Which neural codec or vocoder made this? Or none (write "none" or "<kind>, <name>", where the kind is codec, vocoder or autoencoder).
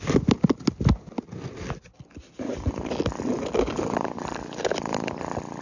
none